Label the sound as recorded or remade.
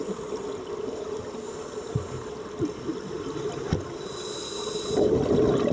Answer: recorded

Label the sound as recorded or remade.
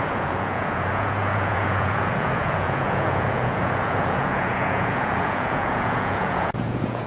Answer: remade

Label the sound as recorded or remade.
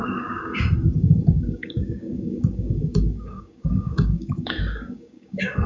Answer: remade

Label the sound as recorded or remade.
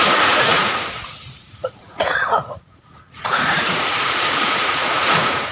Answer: remade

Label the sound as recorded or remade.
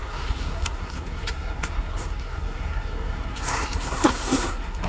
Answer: remade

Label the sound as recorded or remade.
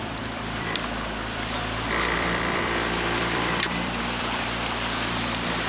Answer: remade